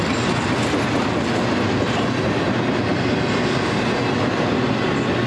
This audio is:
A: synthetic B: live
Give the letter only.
B